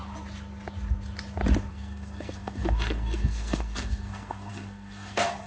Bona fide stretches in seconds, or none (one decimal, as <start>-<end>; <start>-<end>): 0.0-1.7